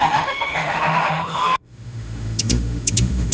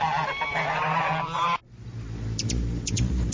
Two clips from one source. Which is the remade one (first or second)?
first